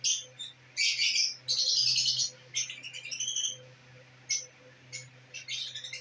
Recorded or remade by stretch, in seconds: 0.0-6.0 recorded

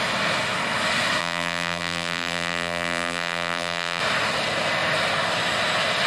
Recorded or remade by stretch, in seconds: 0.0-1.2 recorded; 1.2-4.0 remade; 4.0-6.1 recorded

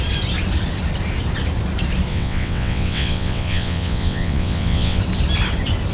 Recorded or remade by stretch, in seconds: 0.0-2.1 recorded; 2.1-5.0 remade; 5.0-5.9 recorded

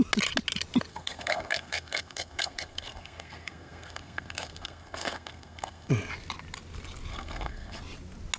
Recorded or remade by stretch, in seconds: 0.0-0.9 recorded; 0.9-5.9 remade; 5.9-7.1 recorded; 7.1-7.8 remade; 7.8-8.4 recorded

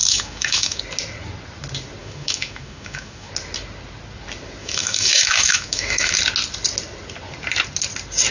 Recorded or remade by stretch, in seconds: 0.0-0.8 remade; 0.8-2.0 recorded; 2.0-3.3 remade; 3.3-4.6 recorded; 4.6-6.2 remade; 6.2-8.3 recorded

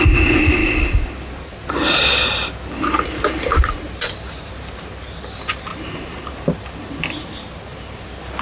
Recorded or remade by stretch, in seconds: 0.0-8.4 recorded

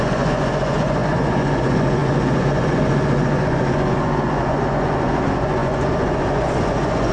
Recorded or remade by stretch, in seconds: 0.0-7.1 remade

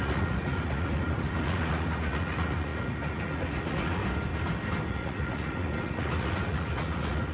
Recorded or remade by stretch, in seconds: 0.0-4.0 remade; 4.0-4.9 recorded; 4.9-7.3 remade